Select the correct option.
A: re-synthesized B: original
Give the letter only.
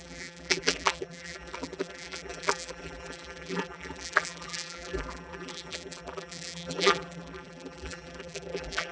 A